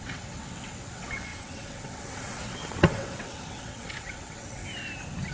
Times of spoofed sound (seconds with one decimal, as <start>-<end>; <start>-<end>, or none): 0.0-4.6